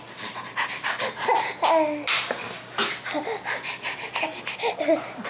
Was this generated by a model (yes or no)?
no